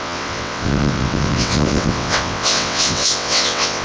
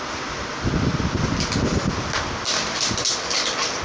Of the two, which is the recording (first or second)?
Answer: second